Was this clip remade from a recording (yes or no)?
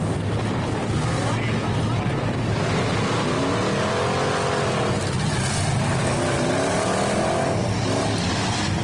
no